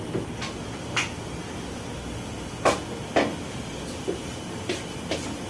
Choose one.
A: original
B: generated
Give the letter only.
A